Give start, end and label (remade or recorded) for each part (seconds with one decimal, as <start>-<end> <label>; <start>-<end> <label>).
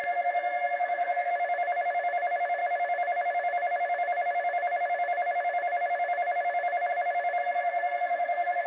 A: 0.0-1.3 remade; 1.3-7.4 recorded; 7.4-8.7 remade